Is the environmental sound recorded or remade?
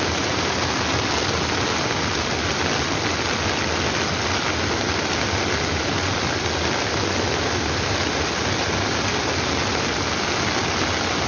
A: recorded